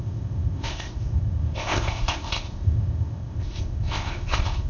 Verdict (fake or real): fake